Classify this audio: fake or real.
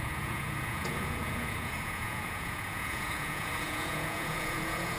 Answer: fake